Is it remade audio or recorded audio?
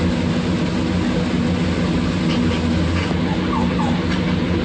recorded